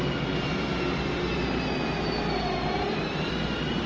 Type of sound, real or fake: real